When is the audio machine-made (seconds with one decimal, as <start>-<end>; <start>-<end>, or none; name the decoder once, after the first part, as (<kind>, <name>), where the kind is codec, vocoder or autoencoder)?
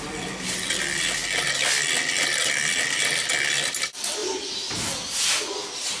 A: 0.0-1.2 (vocoder, BigVGAN v2); 2.5-4.2